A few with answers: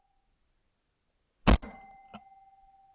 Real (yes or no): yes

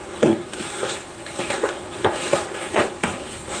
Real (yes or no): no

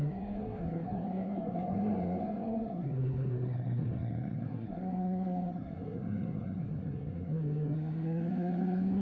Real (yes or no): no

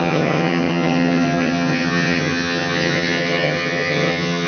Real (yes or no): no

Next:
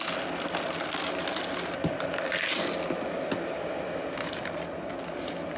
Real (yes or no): yes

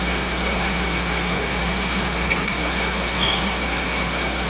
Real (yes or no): no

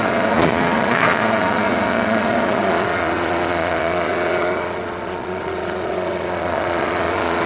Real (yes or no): no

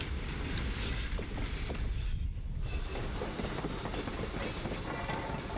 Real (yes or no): yes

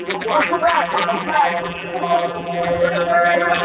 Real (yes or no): no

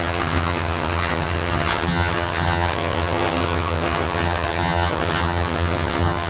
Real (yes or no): no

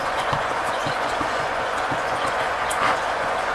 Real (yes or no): no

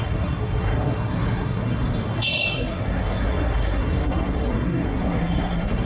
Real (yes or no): no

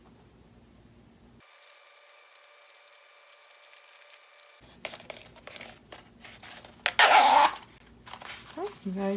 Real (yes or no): yes